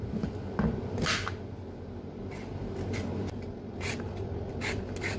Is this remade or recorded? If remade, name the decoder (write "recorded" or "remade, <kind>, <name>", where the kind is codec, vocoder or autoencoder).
recorded